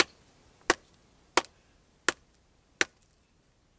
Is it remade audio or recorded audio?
recorded